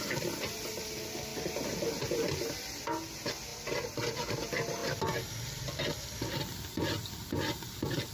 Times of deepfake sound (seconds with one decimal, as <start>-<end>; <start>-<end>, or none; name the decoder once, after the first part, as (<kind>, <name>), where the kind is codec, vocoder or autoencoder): none